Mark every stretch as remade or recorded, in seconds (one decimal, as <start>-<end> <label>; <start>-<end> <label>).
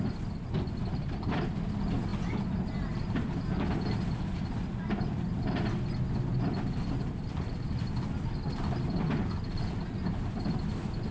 0.0-11.1 recorded